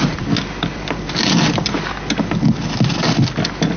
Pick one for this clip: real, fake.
real